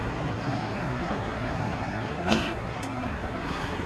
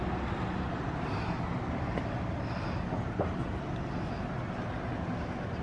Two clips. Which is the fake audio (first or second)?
first